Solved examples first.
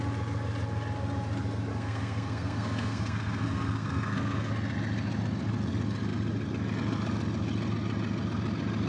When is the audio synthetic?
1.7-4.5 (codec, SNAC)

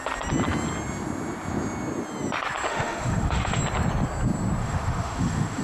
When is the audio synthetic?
2.7-3.6 (autoencoder, DAC-VAE); 4.6-5.6

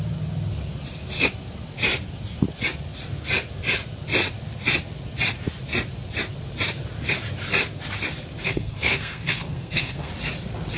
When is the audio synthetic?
8.4-10.1 (codec, SNAC)

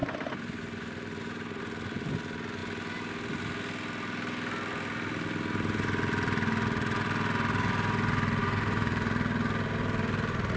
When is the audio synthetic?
0.0-1.6 (vocoder, BigVGAN v2); 8.4-9.1

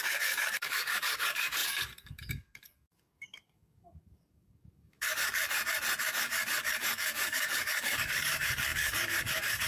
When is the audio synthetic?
0.0-5.4 (codec, DAC); 6.0-9.7